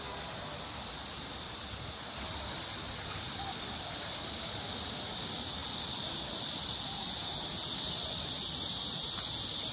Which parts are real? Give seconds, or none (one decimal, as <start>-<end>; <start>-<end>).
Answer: 0.0-9.7